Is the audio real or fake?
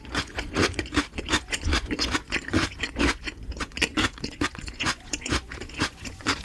fake